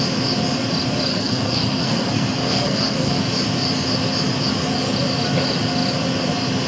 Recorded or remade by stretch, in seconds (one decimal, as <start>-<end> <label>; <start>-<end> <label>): 0.0-1.1 recorded; 1.1-3.2 remade; 3.2-6.7 recorded